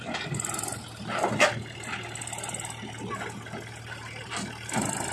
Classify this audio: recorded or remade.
recorded